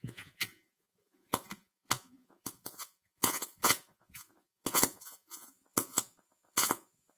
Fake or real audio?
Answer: fake